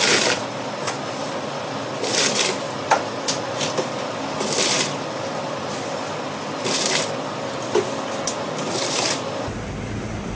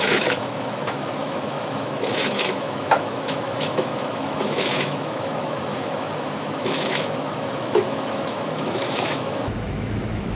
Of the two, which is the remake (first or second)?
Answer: second